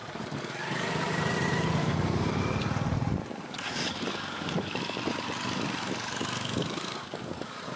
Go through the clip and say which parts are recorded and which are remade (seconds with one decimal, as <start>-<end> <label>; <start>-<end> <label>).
0.0-1.2 remade; 1.2-1.8 recorded; 1.8-2.4 remade; 2.4-3.2 recorded; 3.2-7.8 remade